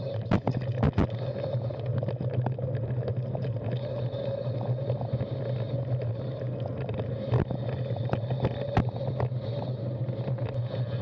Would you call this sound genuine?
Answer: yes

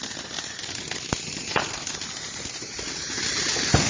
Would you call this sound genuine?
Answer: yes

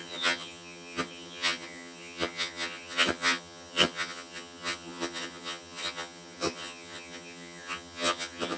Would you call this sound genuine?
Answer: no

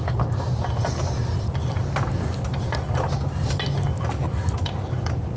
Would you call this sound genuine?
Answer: yes